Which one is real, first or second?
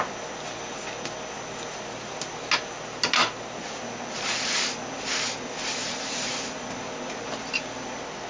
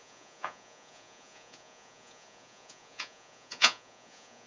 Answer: first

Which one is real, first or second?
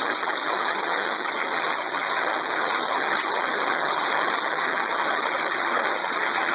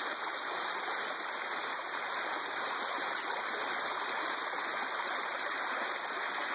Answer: second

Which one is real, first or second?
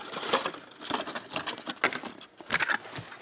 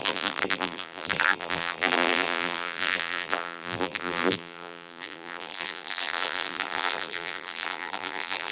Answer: first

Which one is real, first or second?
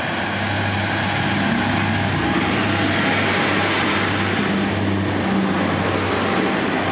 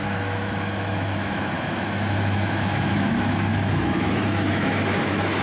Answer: first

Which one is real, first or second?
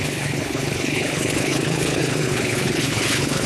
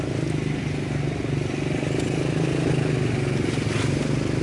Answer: second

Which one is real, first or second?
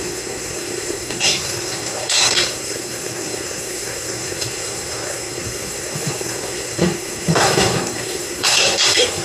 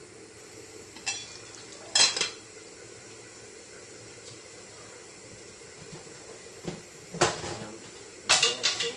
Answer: second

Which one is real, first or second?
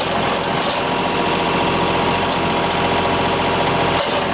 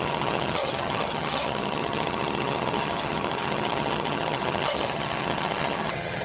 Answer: first